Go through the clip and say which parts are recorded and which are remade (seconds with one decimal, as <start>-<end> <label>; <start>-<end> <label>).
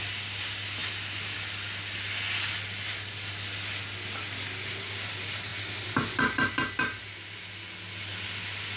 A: 0.0-8.8 recorded